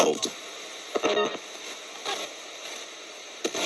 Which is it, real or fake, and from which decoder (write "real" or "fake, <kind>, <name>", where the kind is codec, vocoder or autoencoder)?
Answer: real